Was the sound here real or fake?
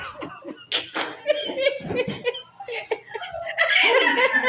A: real